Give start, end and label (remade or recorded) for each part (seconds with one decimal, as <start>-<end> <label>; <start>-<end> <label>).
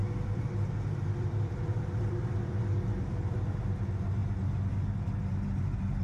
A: 0.0-3.6 remade; 3.6-6.0 recorded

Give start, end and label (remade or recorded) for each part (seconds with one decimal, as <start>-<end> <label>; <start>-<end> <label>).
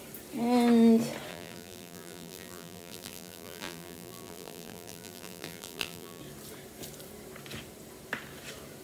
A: 0.0-1.3 recorded; 1.3-6.2 remade; 6.2-8.8 recorded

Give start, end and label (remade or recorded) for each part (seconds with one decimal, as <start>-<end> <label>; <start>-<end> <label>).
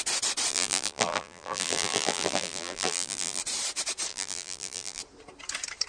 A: 0.0-0.5 recorded; 0.5-3.4 remade; 3.4-4.1 recorded; 4.1-5.0 remade; 5.0-5.9 recorded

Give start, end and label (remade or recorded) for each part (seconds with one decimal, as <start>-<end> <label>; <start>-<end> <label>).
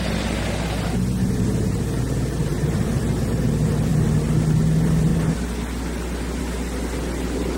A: 0.0-2.5 recorded; 2.5-3.0 remade; 3.0-7.6 recorded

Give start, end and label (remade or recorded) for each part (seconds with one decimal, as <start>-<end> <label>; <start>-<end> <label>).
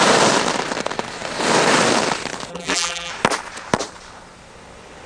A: 0.0-2.5 recorded; 2.5-3.1 remade; 3.1-5.1 recorded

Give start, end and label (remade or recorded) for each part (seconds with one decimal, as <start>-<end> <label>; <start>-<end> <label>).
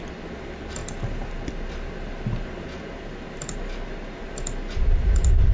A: 0.0-5.5 recorded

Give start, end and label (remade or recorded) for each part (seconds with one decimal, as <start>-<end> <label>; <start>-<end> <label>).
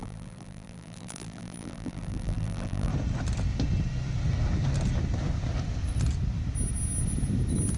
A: 0.0-2.9 remade; 2.9-7.8 recorded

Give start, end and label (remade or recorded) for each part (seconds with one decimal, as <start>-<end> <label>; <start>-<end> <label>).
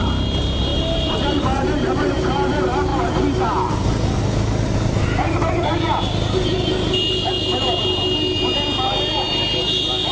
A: 0.0-0.7 recorded; 0.7-2.1 remade; 2.1-10.1 recorded